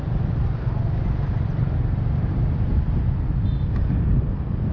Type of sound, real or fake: real